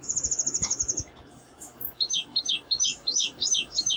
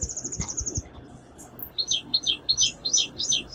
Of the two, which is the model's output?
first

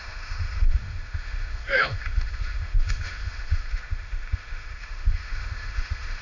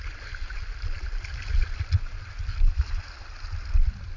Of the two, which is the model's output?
first